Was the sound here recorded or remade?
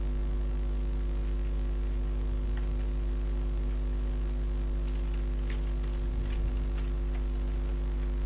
recorded